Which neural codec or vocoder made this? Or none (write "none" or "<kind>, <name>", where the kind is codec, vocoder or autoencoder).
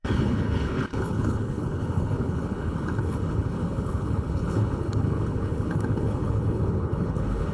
codec, HILCodec